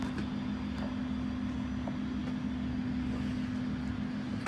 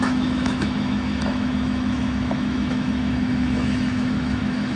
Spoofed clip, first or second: second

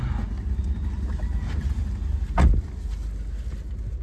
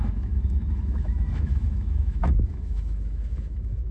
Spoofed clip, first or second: second